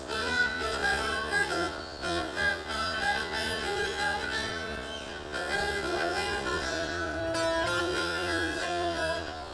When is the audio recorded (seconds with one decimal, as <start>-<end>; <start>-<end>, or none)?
7.2-7.8